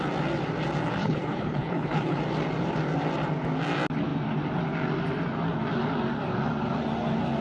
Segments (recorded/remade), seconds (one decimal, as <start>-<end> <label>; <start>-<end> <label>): 0.0-1.0 recorded; 1.0-2.2 remade; 2.2-7.4 recorded